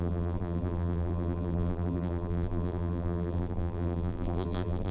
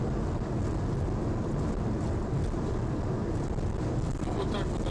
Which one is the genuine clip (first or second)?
second